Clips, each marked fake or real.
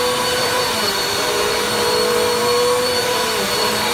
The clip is fake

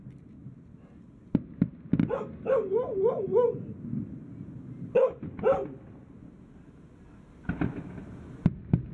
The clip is real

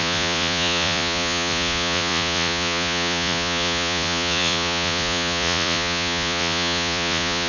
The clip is fake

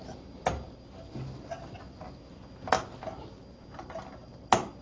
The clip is real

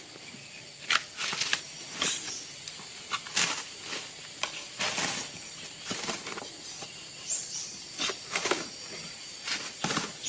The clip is real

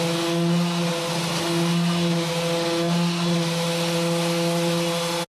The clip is real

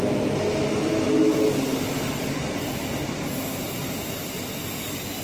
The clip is real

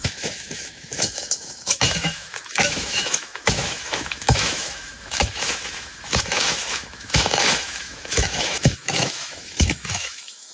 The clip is fake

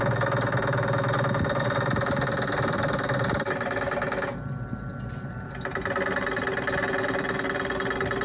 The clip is real